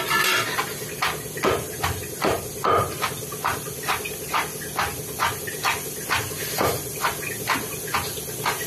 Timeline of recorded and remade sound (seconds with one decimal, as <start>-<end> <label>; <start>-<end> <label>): 0.0-8.7 recorded

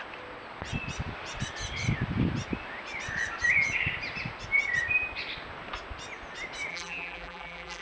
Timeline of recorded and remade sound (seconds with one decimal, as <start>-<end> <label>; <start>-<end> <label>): 0.0-6.7 recorded; 6.7-7.8 remade

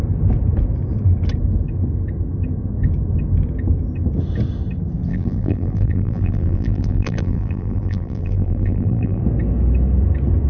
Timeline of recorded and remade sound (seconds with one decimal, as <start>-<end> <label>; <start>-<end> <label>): 0.0-5.1 recorded; 5.1-9.2 remade; 9.2-10.5 recorded

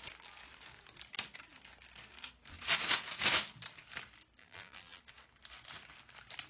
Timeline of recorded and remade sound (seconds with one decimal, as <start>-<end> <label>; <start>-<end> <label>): 0.0-4.4 recorded; 4.4-5.0 remade; 5.0-6.5 recorded

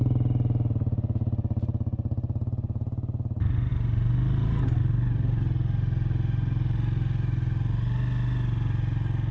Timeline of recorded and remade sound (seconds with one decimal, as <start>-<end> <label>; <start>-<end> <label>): 0.0-9.3 recorded